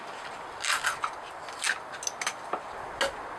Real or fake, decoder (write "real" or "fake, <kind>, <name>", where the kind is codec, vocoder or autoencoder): real